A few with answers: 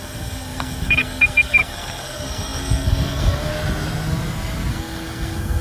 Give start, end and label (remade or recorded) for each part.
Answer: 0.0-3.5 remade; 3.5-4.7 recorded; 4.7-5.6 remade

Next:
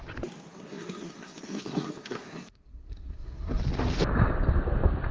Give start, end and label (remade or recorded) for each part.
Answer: 0.0-0.5 recorded; 0.5-3.6 remade; 3.6-5.1 recorded

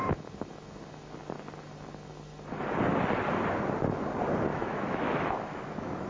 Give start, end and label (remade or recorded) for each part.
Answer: 0.0-4.5 recorded; 4.5-6.1 remade

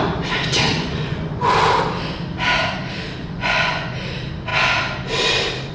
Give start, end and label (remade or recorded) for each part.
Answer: 0.0-0.7 recorded; 0.7-1.6 remade; 1.6-3.2 recorded; 3.2-3.9 remade; 3.9-5.7 recorded